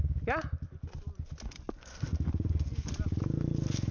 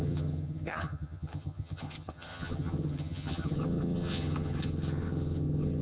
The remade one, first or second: second